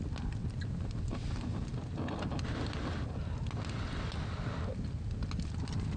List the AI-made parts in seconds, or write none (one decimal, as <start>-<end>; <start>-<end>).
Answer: none